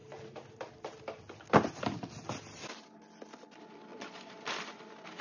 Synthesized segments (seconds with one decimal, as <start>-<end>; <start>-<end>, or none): 3.9-4.5